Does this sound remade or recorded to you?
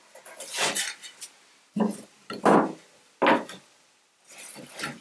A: recorded